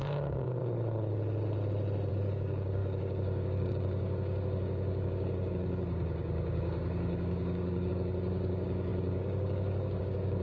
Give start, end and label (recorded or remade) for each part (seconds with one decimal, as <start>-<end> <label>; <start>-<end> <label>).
0.0-0.6 remade; 0.6-2.1 recorded; 2.1-10.4 remade